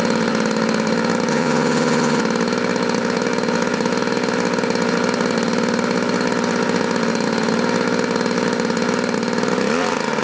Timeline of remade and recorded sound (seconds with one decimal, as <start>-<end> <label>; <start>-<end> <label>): 0.0-1.3 recorded; 1.3-2.2 remade; 2.2-10.2 recorded